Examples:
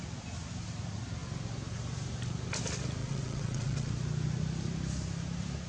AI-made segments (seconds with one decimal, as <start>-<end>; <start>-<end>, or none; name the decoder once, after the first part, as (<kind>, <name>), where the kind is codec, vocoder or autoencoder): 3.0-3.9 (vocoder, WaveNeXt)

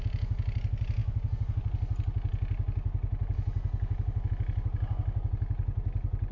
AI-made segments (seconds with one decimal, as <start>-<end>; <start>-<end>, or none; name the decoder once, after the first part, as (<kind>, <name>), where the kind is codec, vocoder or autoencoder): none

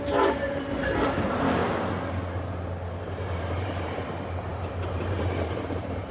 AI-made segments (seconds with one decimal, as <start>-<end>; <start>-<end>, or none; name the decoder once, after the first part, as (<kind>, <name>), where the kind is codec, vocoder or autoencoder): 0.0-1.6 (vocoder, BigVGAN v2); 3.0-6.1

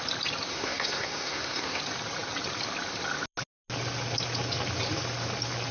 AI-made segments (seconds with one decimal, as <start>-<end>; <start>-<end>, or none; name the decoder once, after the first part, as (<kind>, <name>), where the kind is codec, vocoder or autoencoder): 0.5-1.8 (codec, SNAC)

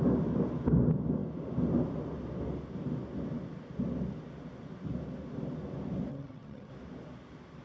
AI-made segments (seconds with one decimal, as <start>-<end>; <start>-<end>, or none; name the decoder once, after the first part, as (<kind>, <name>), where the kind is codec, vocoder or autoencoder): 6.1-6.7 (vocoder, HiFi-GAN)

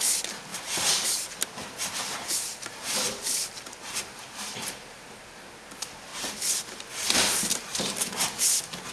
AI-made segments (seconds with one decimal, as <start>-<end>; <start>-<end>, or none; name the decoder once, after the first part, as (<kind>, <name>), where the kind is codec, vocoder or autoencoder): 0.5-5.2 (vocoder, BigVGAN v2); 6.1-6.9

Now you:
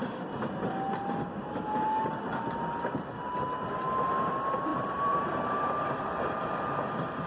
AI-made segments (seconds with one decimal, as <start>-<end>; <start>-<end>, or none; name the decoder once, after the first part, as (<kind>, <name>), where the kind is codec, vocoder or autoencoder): 4.7-6.2 (vocoder, BigVGAN v2)